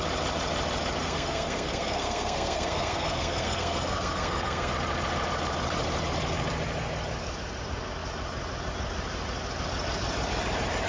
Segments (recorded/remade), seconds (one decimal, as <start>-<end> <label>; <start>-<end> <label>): 0.0-1.0 recorded; 1.0-4.7 remade; 4.7-10.9 recorded